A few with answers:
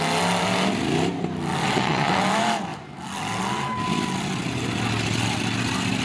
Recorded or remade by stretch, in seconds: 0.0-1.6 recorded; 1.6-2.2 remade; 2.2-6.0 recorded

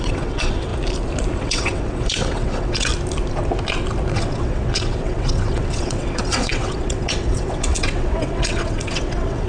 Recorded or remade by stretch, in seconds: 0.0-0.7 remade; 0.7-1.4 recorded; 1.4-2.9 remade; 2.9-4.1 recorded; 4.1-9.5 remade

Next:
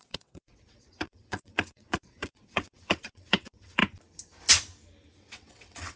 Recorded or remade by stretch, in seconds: 0.0-3.8 remade; 3.8-5.2 recorded; 5.2-6.0 remade